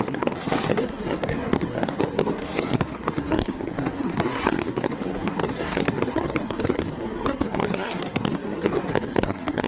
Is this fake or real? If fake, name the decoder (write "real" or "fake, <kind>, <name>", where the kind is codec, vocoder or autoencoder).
fake, codec, SNAC